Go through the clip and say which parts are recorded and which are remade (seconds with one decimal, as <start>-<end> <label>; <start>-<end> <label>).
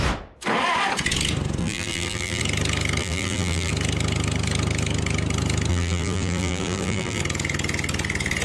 0.0-1.6 recorded; 1.6-2.4 remade; 2.4-3.0 recorded; 3.0-3.7 remade; 3.7-5.7 recorded; 5.7-7.2 remade; 7.2-8.4 recorded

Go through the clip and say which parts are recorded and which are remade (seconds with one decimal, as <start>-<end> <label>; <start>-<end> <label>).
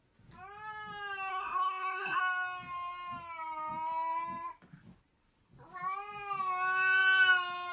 0.0-1.3 recorded; 1.3-2.2 remade; 2.2-7.7 recorded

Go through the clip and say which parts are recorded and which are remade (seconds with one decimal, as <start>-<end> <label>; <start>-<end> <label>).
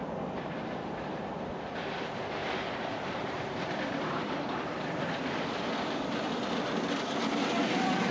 0.0-2.4 recorded; 2.4-6.3 remade; 6.3-8.1 recorded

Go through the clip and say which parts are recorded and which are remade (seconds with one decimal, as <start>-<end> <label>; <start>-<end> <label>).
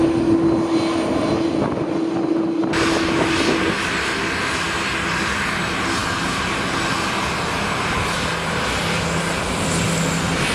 0.0-10.5 recorded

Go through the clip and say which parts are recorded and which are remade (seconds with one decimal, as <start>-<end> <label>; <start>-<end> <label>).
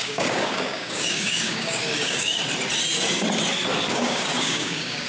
0.0-2.4 remade; 2.4-3.9 recorded; 3.9-5.1 remade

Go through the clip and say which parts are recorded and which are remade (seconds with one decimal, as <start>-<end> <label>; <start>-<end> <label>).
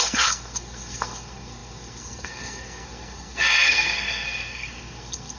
0.0-5.4 remade